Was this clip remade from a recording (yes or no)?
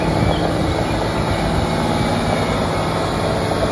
no